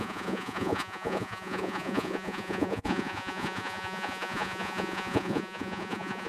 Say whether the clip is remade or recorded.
remade